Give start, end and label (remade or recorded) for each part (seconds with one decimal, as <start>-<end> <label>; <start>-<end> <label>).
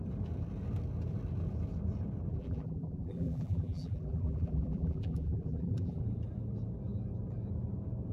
0.0-2.3 recorded; 2.3-6.0 remade; 6.0-8.1 recorded